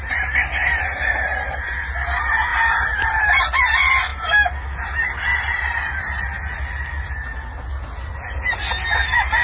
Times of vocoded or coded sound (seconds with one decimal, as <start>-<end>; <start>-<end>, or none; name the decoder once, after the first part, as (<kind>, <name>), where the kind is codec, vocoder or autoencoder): 0.6-1.5 (vocoder, BigVGAN v2); 5.3-6.2